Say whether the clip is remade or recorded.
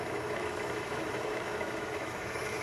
remade